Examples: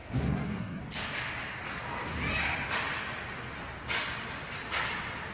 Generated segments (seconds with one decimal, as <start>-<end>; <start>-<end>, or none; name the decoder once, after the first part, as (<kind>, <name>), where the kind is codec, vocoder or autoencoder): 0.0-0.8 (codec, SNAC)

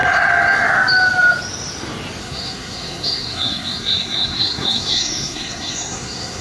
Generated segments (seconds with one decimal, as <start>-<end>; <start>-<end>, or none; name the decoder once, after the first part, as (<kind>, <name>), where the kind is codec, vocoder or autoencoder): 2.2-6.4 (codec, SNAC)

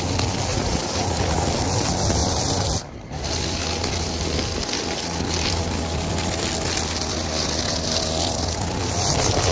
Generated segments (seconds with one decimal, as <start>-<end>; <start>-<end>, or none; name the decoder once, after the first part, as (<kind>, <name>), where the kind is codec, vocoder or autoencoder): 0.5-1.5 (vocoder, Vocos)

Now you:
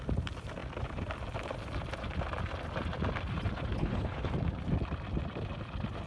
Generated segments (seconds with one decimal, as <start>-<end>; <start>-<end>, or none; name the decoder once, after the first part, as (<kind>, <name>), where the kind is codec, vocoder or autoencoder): 3.8-4.3 (codec, HILCodec)

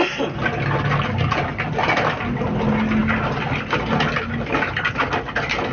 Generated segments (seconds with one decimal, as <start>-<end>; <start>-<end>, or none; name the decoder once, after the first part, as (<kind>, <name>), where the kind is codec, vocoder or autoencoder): none

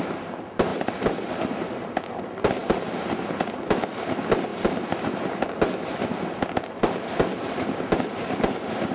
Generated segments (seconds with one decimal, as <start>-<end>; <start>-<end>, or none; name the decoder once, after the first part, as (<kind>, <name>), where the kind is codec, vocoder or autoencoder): 0.7-1.3 (vocoder, BigVGAN v2); 4.5-5.4